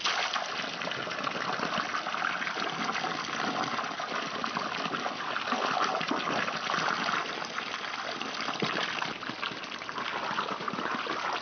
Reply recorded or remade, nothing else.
recorded